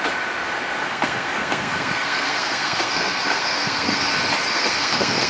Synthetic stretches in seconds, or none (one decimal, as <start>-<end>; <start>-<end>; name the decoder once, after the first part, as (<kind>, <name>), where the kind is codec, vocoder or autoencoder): 0.8-4.0 (codec, SNAC); 4.5-5.3